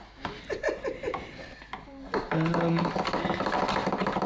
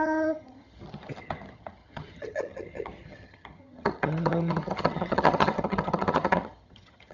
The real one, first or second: first